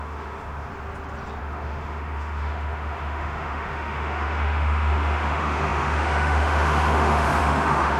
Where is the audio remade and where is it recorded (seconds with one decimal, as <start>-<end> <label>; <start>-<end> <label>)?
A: 0.0-0.7 remade; 0.7-1.4 recorded; 1.4-8.0 remade